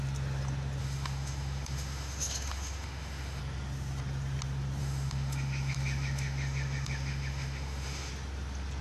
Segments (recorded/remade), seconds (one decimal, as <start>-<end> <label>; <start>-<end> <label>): 0.0-0.8 recorded; 0.8-3.4 remade; 3.4-4.8 recorded; 4.8-8.1 remade; 8.1-8.8 recorded